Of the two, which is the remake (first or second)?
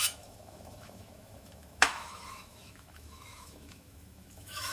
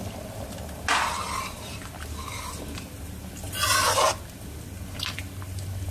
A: first